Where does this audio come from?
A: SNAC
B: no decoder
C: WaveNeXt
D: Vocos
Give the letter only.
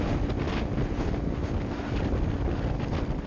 B